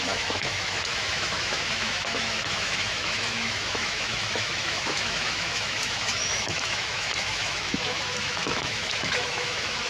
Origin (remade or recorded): remade